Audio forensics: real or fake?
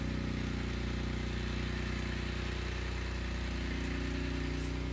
real